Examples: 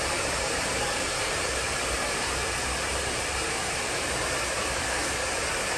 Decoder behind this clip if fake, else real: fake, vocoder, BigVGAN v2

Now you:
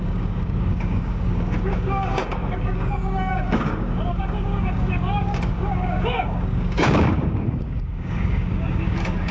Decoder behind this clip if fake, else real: fake, codec, DAC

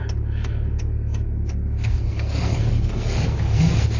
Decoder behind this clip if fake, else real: fake, codec, SNAC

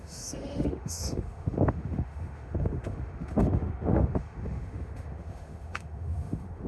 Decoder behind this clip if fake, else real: fake, autoencoder, DAC-VAE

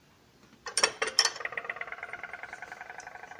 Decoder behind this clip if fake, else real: real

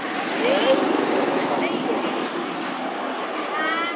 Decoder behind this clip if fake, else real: real